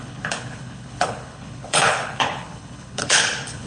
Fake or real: fake